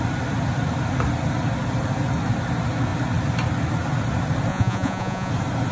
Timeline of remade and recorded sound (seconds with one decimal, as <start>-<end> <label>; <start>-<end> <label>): 0.0-4.5 recorded; 4.5-5.3 remade; 5.3-5.7 recorded